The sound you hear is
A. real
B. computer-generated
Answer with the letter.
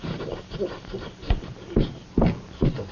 A